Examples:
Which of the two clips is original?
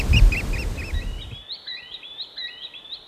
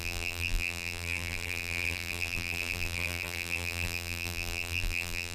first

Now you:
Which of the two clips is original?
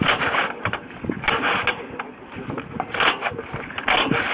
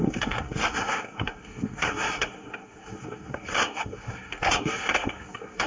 first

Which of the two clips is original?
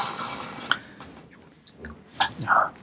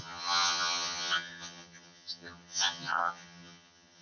first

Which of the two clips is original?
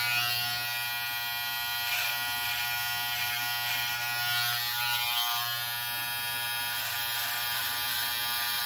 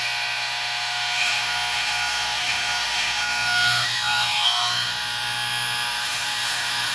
first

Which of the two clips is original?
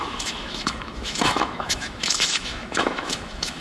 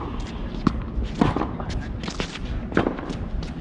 second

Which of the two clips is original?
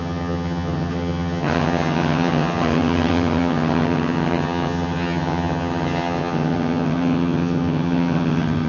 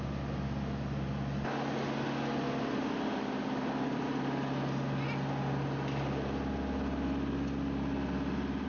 second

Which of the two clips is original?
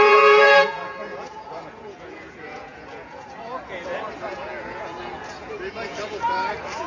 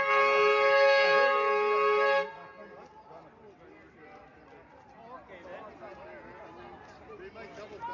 second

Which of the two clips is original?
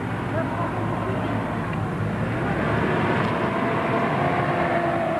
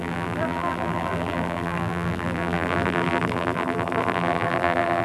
first